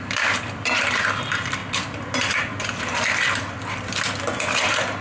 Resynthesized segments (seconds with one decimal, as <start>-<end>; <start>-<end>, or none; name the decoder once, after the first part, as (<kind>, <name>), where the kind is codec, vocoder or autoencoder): 0.0-5.0 (vocoder, BigVGAN v2)